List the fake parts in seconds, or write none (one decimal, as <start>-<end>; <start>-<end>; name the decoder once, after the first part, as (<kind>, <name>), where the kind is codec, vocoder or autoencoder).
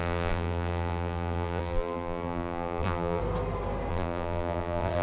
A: 0.0-3.2 (vocoder, BigVGAN v2); 3.9-5.0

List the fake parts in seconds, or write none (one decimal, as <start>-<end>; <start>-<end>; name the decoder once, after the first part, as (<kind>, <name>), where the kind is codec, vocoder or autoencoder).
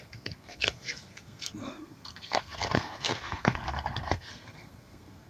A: 0.0-5.3 (codec, SNAC)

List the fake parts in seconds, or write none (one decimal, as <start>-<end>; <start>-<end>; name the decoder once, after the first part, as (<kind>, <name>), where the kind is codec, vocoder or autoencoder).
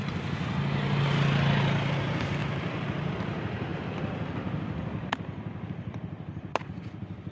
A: 2.4-3.2 (vocoder, BigVGAN v2)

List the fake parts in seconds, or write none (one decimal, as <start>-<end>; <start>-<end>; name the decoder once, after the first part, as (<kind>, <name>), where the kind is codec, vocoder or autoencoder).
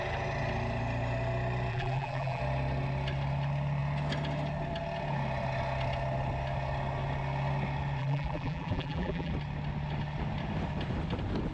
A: 1.7-2.4 (vocoder, BigVGAN v2); 8.0-9.3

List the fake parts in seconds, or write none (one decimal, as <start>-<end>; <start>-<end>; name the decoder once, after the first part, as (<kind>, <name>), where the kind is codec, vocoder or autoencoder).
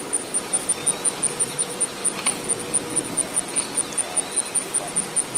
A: 0.0-0.8 (vocoder, BigVGAN v2); 1.4-2.0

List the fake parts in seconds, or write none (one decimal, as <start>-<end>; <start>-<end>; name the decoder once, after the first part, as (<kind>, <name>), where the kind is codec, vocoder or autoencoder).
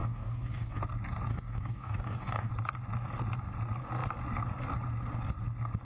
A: 0.0-0.8 (codec, DAC); 1.3-2.5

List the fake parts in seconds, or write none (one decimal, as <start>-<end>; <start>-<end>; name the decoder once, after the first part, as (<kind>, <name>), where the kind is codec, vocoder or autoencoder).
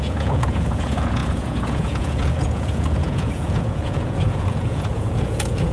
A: 0.0-5.7 (vocoder, Vocos)